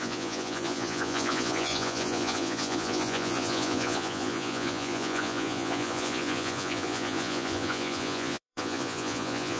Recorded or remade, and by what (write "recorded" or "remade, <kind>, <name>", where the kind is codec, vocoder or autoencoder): remade, vocoder, Vocos